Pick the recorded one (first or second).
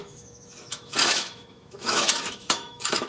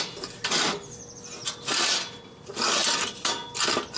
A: second